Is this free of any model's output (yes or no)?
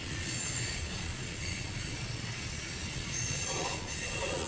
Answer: no